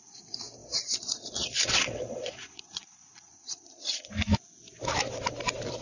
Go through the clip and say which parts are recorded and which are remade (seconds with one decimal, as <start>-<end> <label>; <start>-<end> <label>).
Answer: 0.0-0.6 recorded; 0.6-4.1 remade; 4.1-5.8 recorded